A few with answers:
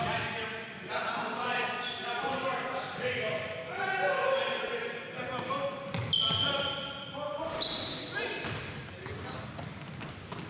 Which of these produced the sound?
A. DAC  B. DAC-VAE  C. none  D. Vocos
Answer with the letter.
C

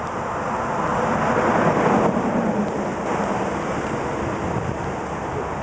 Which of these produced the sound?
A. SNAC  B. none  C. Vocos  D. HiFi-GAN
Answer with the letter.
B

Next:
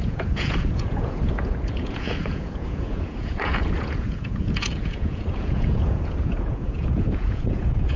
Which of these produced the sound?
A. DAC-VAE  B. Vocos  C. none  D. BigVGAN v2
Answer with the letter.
B